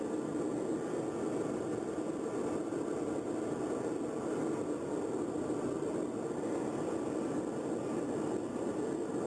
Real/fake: real